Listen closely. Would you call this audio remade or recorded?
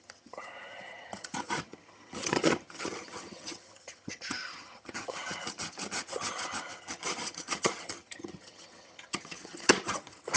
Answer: remade